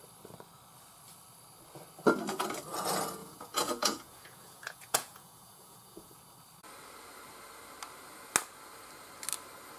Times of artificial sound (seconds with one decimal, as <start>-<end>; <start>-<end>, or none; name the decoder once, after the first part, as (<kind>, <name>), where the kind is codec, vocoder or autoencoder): 3.2-6.2 (vocoder, Vocos)